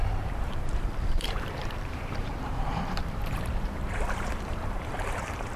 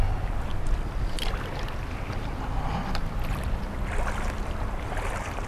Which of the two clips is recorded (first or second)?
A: second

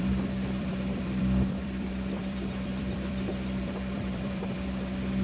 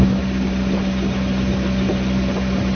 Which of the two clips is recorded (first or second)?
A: second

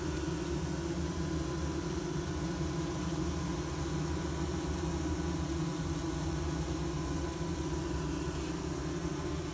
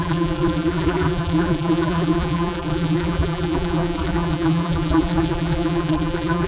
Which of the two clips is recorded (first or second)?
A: first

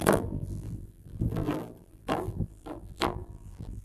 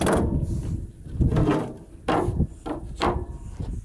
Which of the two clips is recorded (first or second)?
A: second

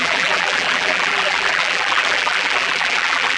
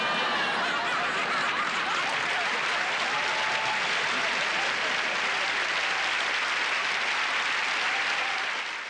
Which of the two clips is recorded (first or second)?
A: second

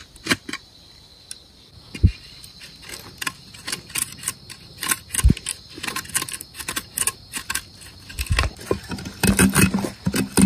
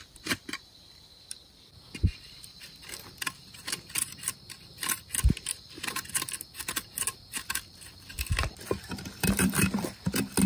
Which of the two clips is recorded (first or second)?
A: first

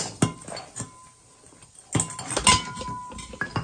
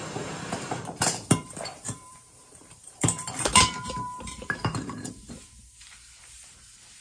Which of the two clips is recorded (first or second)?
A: first